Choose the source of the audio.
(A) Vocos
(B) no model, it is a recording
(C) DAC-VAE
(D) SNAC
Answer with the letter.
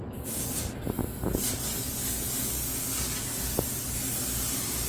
B